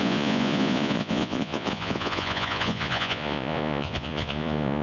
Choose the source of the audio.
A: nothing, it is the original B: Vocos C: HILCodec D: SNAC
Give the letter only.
B